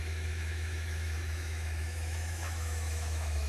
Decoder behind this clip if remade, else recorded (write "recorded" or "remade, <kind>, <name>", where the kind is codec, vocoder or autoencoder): remade, autoencoder, DAC-VAE